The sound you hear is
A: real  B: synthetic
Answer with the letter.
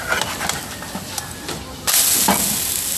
A